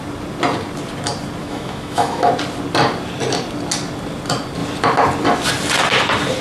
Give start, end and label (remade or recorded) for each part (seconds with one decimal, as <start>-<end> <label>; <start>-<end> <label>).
0.0-1.4 recorded; 1.4-2.3 remade; 2.3-6.4 recorded